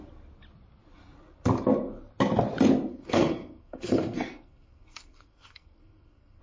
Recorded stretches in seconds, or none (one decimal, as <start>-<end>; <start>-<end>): 0.0-2.9